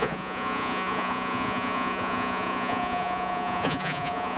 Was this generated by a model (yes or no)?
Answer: yes